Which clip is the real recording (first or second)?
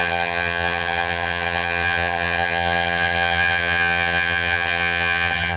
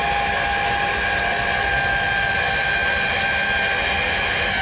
second